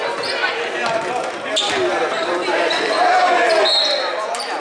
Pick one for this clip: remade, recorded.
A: recorded